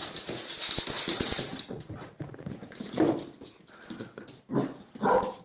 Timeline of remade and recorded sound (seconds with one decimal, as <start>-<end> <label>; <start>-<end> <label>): 0.0-0.5 remade; 0.5-1.1 recorded; 1.1-3.0 remade; 3.0-5.4 recorded